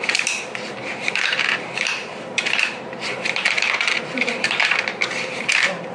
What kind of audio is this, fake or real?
fake